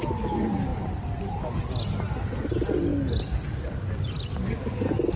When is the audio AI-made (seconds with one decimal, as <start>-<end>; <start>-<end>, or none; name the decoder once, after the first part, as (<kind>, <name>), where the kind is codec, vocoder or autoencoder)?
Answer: none